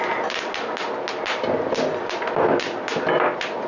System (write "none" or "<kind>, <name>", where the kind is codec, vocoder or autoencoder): none